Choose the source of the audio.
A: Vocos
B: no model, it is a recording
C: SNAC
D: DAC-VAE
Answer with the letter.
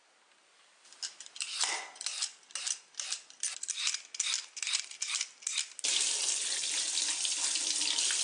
B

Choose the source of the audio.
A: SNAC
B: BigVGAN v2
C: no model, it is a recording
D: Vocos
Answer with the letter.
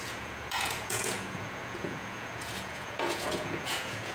D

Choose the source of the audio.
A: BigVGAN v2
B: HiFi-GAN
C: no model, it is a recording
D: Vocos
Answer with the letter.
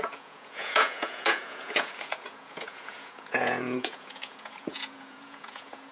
D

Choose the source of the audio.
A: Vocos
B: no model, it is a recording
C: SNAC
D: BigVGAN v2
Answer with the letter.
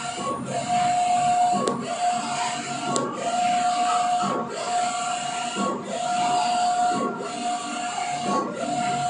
B